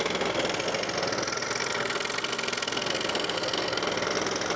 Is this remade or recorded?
recorded